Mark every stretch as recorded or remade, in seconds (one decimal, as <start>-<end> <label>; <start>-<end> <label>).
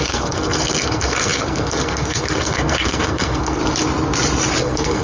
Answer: 0.0-3.6 remade; 3.6-4.6 recorded; 4.6-5.0 remade